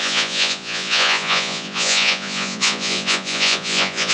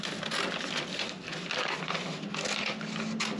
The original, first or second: second